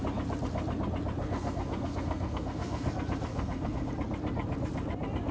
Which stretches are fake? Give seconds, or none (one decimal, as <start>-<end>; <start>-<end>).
1.2-2.9; 3.3-3.9